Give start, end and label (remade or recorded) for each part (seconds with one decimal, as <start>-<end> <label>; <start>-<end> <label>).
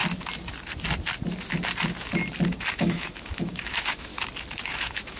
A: 0.0-2.7 recorded; 2.7-4.1 remade; 4.1-4.7 recorded; 4.7-5.2 remade